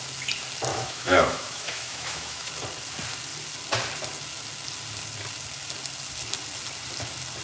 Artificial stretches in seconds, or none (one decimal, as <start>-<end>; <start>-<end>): 0.7-2.5